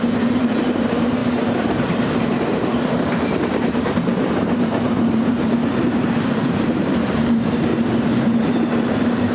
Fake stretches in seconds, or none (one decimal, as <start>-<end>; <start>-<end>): 0.0-7.7; 8.4-9.3

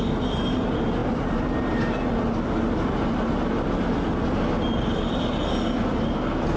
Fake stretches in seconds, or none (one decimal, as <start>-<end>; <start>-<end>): none

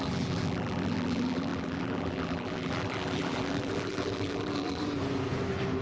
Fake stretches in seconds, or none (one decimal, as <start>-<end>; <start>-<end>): 0.0-4.8